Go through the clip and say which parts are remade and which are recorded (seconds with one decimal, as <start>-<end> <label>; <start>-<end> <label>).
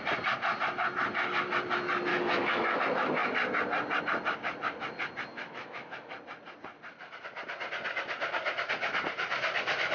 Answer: 0.0-2.1 recorded; 2.1-2.8 remade; 2.8-5.3 recorded; 5.3-6.1 remade; 6.1-9.9 recorded